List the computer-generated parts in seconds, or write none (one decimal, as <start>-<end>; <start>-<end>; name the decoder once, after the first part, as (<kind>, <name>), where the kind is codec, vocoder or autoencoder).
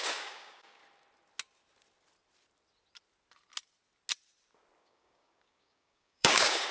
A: 0.0-0.8 (codec, DAC); 4.8-6.7